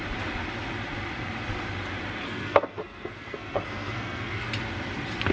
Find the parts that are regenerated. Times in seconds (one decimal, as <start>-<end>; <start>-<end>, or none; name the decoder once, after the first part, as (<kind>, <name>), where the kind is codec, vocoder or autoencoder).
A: 2.2-4.5 (codec, SNAC)